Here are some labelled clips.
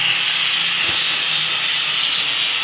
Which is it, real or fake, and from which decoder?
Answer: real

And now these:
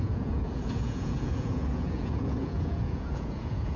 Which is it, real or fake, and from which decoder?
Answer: fake, vocoder, Vocos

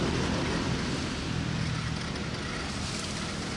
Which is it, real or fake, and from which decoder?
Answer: real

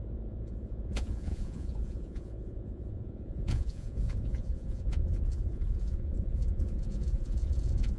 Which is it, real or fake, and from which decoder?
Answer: fake, vocoder, Vocos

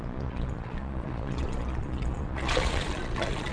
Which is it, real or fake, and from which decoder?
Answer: fake, vocoder, Vocos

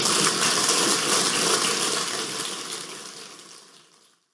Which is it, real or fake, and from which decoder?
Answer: real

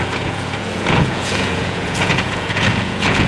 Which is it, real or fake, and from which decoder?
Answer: fake, vocoder, Vocos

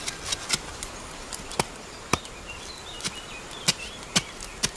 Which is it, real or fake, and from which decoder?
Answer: real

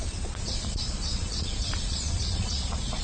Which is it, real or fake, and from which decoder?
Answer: fake, vocoder, Vocos